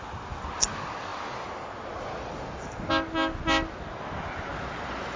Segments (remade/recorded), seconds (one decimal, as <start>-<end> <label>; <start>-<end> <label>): 0.0-5.2 recorded